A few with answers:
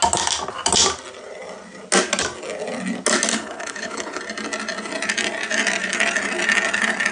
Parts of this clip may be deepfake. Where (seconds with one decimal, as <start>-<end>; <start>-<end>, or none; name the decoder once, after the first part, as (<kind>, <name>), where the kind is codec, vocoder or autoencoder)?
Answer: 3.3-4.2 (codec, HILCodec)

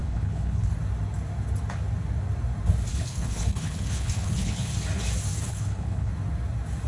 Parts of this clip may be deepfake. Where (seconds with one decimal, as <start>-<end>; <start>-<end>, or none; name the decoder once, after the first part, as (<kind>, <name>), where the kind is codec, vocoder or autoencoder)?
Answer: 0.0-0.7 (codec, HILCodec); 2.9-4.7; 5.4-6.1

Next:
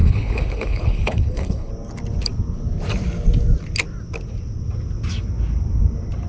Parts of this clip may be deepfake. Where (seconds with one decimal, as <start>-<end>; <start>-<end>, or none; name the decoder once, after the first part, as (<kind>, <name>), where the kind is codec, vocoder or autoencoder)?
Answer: 0.0-1.7 (codec, HILCodec)